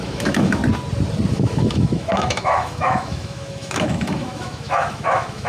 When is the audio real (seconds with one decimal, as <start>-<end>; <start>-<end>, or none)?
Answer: 0.6-1.3